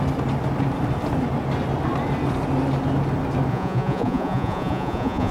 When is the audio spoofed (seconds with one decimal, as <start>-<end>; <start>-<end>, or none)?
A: 3.5-5.3